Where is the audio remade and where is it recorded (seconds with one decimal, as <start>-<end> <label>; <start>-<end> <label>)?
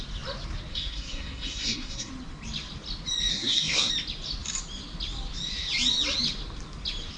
0.0-0.7 recorded; 0.7-2.1 remade; 2.1-3.3 recorded; 3.3-3.9 remade; 3.9-7.2 recorded